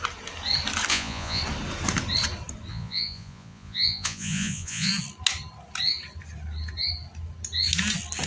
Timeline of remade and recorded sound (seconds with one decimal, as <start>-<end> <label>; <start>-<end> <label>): 0.0-0.9 recorded; 0.9-1.4 remade; 1.4-2.7 recorded; 2.7-4.9 remade; 4.9-8.3 recorded